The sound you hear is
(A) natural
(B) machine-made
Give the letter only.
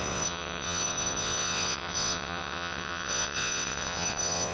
B